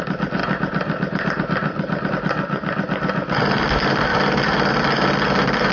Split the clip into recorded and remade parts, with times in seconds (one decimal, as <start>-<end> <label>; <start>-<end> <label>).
0.0-4.1 recorded; 4.1-4.7 remade; 4.7-5.7 recorded